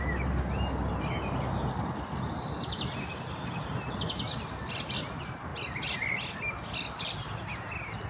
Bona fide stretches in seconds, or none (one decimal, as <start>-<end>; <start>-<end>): 0.0-8.1